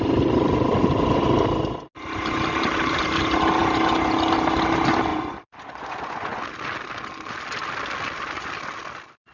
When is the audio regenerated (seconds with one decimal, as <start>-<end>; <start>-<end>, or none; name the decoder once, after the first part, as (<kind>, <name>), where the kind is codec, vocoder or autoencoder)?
5.1-6.4 (vocoder, Vocos)